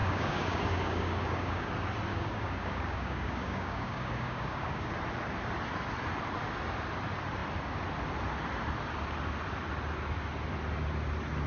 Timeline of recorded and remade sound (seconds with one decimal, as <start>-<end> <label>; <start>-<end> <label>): 0.0-1.7 remade; 1.7-2.1 recorded; 2.1-4.9 remade; 4.9-11.5 recorded

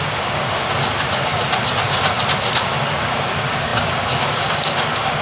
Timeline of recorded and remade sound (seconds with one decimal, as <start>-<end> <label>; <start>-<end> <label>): 0.0-1.3 remade; 1.3-2.6 recorded; 2.6-5.2 remade

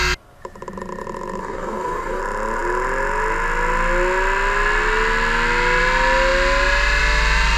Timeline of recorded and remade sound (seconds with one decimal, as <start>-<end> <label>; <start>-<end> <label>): 0.0-1.4 recorded; 1.4-2.2 remade; 2.2-7.6 recorded